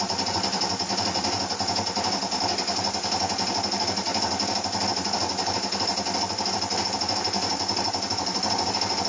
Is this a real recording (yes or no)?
yes